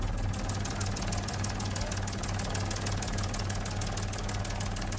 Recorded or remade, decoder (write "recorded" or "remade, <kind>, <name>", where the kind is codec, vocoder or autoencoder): recorded